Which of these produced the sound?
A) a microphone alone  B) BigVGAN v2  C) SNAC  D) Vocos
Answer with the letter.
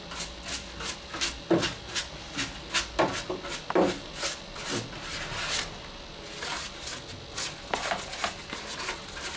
A